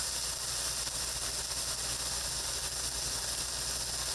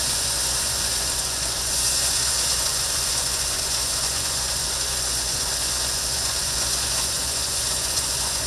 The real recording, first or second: first